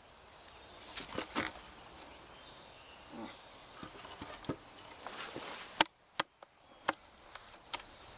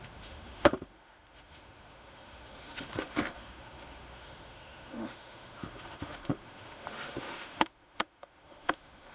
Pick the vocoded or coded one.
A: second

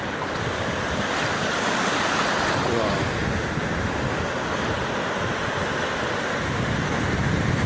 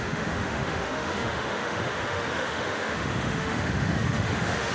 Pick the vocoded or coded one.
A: second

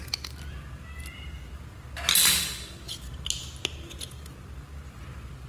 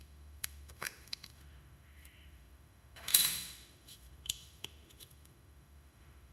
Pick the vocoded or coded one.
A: second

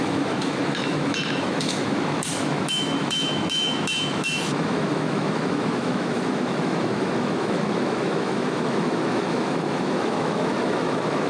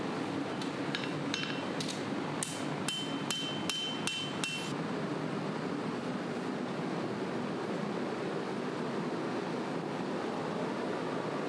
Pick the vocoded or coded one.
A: first